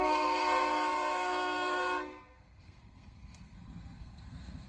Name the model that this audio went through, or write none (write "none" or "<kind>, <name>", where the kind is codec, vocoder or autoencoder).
codec, SNAC